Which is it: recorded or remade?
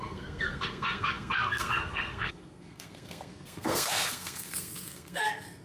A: remade